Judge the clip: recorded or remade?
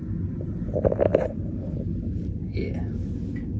recorded